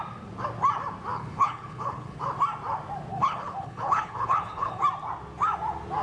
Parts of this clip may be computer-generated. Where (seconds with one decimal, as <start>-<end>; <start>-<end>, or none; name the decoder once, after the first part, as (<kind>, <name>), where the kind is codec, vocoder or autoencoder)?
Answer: 1.1-2.2 (codec, HILCodec); 3.1-4.8